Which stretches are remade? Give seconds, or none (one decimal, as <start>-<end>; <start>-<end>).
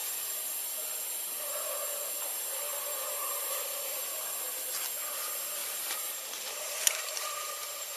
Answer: 2.7-3.6; 5.6-8.0